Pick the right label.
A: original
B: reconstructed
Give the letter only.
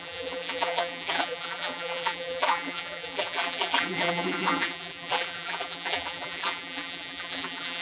B